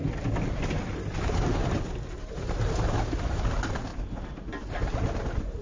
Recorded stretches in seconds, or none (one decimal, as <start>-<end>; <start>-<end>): 0.0-5.6

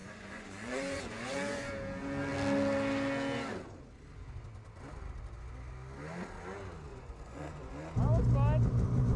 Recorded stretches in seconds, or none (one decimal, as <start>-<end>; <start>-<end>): 1.7-6.9; 7.7-9.2

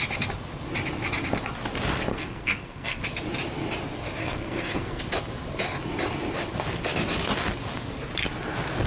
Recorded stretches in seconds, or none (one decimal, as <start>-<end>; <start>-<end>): 0.0-2.1; 3.0-4.2; 5.0-8.9

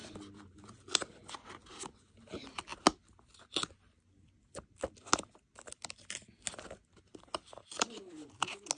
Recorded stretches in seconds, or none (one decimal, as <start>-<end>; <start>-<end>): 0.0-8.8